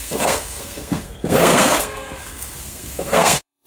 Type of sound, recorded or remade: remade